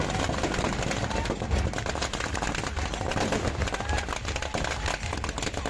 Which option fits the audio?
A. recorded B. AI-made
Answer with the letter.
A